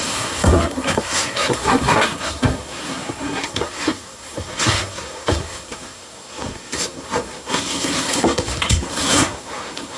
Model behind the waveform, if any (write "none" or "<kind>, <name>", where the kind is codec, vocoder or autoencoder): codec, SNAC